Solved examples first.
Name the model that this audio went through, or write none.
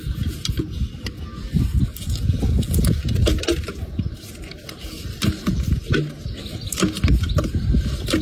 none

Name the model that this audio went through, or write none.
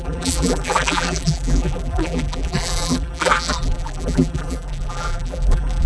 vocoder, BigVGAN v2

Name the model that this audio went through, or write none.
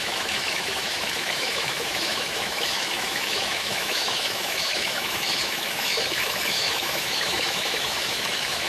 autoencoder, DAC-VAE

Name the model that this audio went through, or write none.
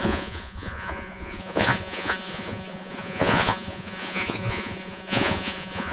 vocoder, Vocos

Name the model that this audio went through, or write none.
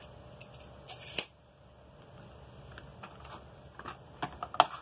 none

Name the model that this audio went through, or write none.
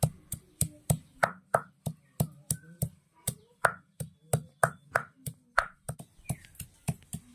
none